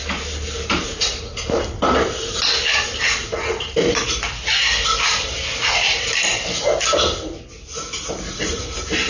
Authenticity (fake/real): fake